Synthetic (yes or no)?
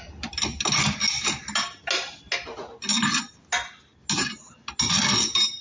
no